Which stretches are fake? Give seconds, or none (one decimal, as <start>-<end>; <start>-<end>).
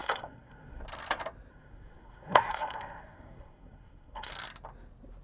0.0-0.8; 1.5-4.3